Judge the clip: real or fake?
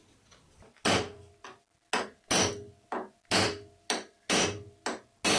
real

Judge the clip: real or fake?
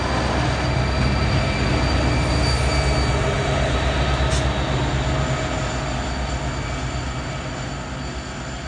real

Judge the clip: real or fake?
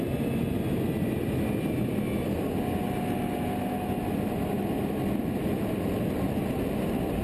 real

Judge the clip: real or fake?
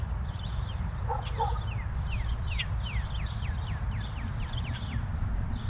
real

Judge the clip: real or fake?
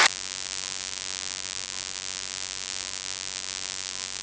real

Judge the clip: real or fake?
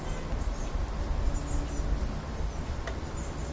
real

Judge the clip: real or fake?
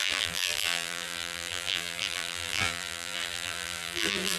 fake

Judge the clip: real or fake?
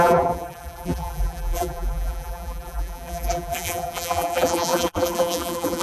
fake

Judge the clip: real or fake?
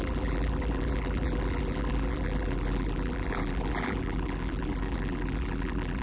fake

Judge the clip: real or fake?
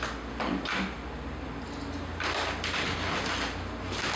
real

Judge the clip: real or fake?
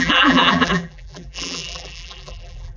fake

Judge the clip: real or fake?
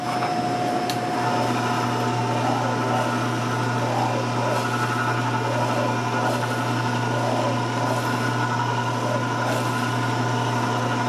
real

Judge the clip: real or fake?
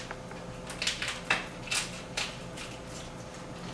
real